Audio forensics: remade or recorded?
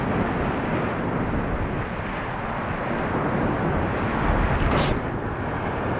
recorded